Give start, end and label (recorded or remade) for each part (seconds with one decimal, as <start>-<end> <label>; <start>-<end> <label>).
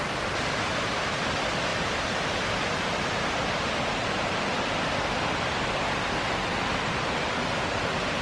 0.0-1.7 recorded; 1.7-4.4 remade; 4.4-8.2 recorded